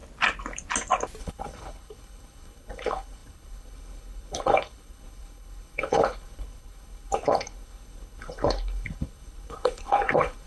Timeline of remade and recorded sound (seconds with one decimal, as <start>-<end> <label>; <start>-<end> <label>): 0.0-1.2 recorded; 1.2-10.5 remade